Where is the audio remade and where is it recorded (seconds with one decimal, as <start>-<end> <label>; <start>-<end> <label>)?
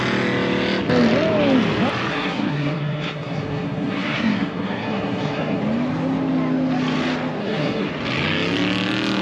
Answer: 0.0-2.1 recorded; 2.1-5.6 remade; 5.6-7.4 recorded; 7.4-7.9 remade; 7.9-9.2 recorded